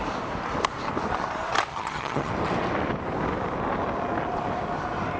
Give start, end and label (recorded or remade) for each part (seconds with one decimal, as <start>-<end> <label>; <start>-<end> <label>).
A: 0.0-1.7 recorded; 1.7-2.3 remade; 2.3-5.2 recorded